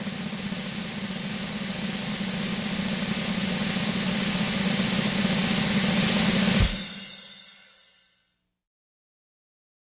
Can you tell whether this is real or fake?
real